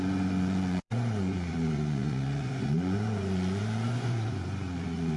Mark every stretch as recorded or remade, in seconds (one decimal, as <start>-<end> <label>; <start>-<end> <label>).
0.0-5.2 remade